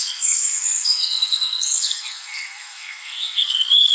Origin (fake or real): fake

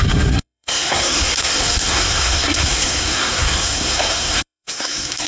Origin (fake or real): fake